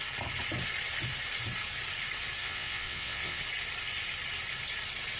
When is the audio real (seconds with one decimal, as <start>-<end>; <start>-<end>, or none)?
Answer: 0.0-2.4; 3.4-5.2